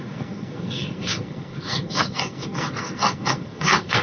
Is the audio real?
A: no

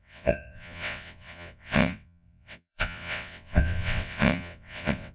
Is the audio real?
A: no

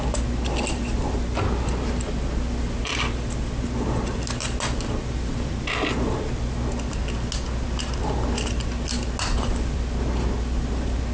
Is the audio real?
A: yes